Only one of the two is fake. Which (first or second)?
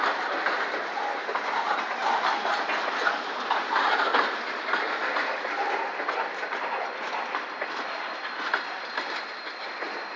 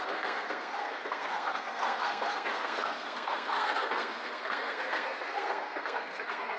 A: second